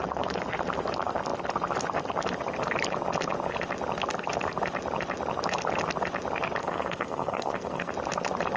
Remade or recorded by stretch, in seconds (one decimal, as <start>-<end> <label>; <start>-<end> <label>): 0.0-6.6 recorded; 6.6-7.9 remade; 7.9-8.6 recorded